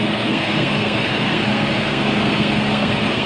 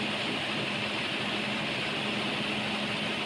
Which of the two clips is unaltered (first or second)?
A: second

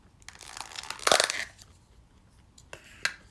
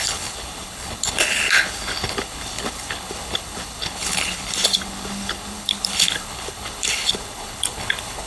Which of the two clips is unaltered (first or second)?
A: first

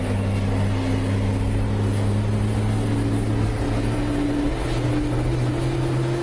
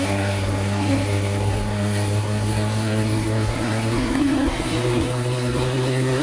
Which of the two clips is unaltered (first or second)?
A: first